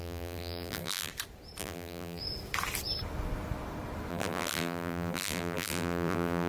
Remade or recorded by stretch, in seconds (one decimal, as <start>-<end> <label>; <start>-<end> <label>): 0.0-1.1 remade; 1.1-1.6 recorded; 1.6-2.2 remade; 2.2-4.1 recorded; 4.1-6.5 remade